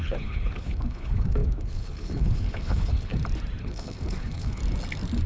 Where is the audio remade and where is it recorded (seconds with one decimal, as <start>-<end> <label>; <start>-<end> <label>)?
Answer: 0.0-3.1 remade; 3.1-3.6 recorded; 3.6-4.6 remade; 4.6-5.3 recorded